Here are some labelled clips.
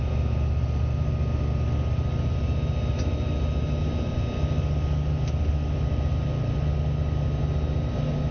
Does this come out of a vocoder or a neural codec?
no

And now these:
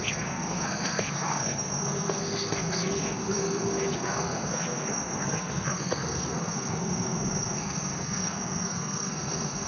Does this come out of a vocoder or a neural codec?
yes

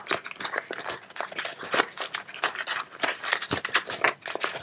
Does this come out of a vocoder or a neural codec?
no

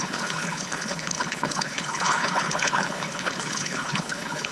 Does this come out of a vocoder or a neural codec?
yes